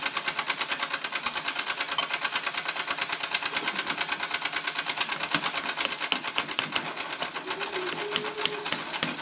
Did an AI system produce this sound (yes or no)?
no